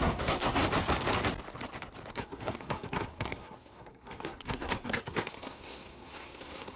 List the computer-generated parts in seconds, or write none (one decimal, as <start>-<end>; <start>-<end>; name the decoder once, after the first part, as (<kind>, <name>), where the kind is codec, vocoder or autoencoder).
0.0-0.6 (codec, SNAC); 2.1-6.8